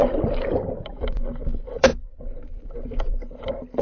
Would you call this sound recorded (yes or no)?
no